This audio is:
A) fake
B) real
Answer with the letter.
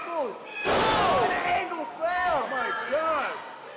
B